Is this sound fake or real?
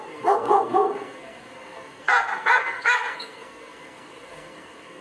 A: fake